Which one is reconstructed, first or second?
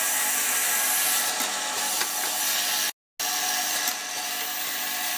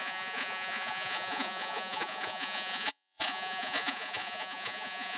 second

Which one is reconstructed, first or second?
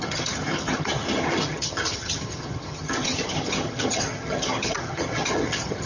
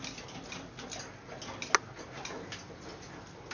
first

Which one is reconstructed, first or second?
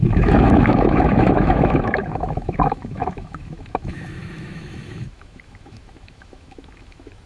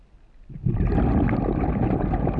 first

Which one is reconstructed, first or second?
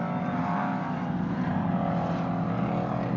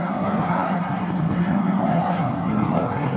second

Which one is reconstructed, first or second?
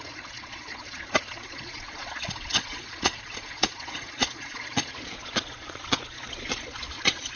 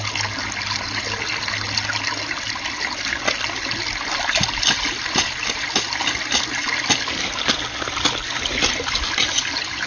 first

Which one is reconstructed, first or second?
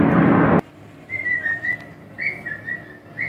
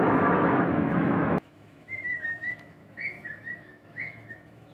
second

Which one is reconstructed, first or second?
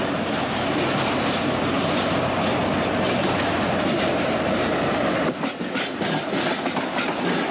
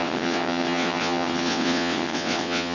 second